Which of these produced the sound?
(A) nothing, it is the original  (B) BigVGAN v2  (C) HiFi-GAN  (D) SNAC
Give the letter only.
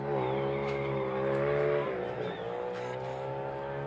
A